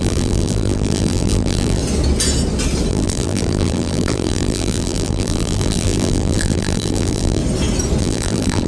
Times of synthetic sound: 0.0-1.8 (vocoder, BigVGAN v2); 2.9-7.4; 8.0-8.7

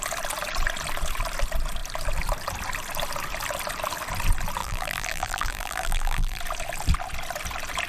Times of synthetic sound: 4.6-6.4 (vocoder, BigVGAN v2)